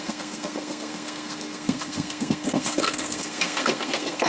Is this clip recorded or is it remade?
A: remade